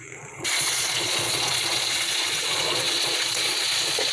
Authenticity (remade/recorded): remade